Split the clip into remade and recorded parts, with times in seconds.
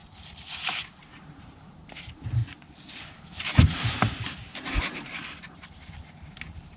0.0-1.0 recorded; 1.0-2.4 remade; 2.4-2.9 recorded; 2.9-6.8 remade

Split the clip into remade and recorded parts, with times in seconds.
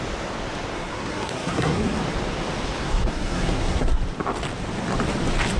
0.0-0.7 recorded; 0.7-2.0 remade; 2.0-2.8 recorded; 2.8-4.0 remade; 4.0-5.6 recorded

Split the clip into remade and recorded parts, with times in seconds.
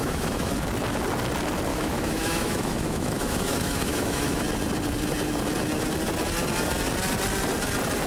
0.0-0.5 remade; 0.5-1.7 recorded; 1.7-4.4 remade; 4.4-8.1 recorded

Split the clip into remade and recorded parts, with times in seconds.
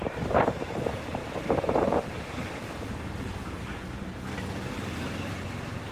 0.0-1.2 remade; 1.2-4.7 recorded; 4.7-5.9 remade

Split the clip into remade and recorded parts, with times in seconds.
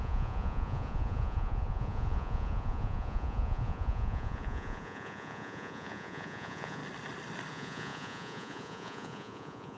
0.0-6.8 remade; 6.8-7.5 recorded; 7.5-9.8 remade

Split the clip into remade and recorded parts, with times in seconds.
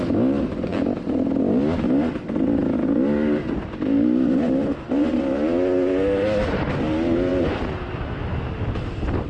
0.0-9.3 recorded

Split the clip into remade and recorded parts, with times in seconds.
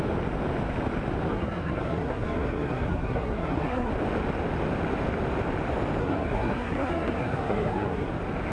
0.0-1.3 recorded; 1.3-3.9 remade; 3.9-6.0 recorded; 6.0-8.1 remade; 8.1-8.5 recorded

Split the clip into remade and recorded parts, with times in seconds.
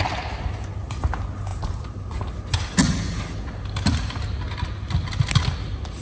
0.0-1.5 recorded; 1.5-2.3 remade; 2.3-6.0 recorded